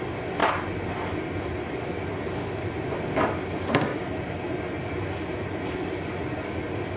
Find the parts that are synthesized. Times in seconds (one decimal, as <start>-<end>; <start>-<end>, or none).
0.0-0.4; 1.4-3.9; 4.9-7.0